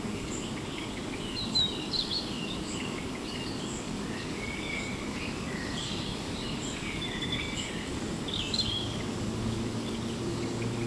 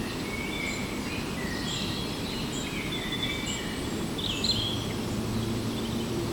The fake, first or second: first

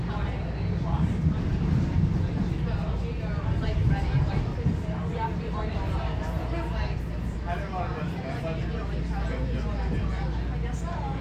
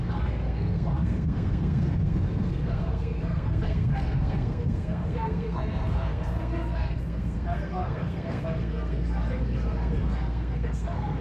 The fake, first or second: second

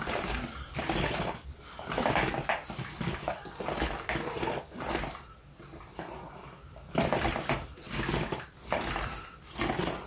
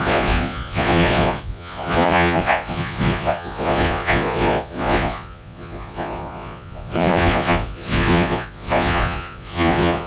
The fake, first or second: second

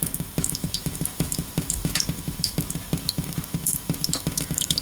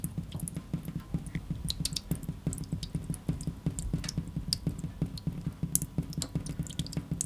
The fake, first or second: first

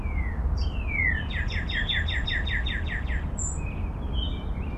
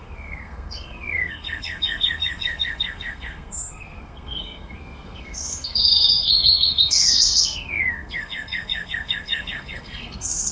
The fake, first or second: second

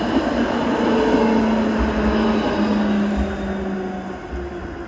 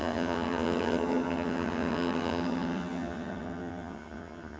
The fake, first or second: second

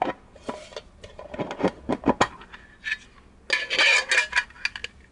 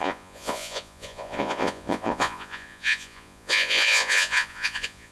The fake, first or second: second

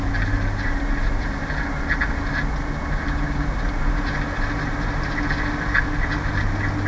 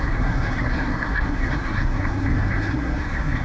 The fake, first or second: second